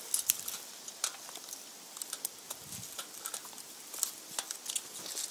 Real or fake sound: real